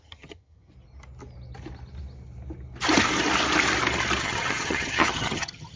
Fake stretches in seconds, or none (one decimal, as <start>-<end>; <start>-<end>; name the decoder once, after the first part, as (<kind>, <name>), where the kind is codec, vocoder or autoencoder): 0.0-0.7 (vocoder, HiFi-GAN); 4.2-5.8